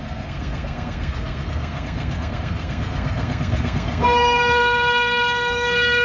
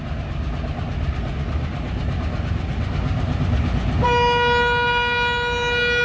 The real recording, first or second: second